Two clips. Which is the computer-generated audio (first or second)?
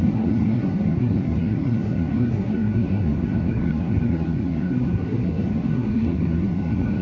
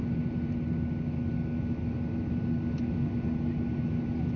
first